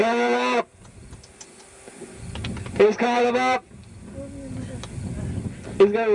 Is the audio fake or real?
real